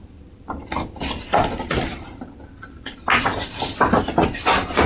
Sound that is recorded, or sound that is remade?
recorded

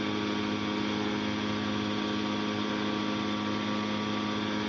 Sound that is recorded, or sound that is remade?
recorded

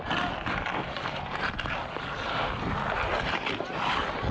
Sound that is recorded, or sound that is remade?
recorded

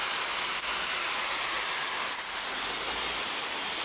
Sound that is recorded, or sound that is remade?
recorded